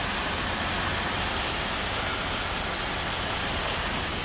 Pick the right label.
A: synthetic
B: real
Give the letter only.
B